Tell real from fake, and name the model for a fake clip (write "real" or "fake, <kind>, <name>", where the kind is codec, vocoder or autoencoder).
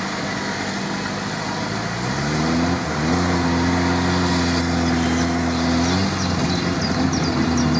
real